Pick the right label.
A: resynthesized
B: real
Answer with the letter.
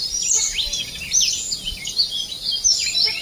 B